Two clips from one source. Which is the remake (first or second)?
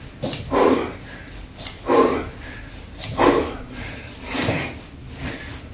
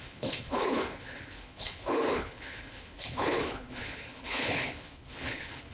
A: second